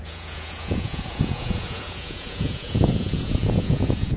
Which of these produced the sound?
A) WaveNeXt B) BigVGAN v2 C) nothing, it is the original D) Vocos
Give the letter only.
D